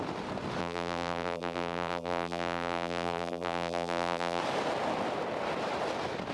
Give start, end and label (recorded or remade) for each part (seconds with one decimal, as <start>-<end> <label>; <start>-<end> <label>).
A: 0.0-0.6 recorded; 0.6-4.4 remade; 4.4-6.3 recorded